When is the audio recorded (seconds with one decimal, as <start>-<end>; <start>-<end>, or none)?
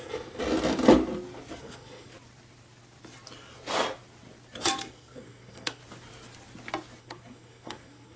0.4-1.6; 2.1-4.9; 5.8-7.0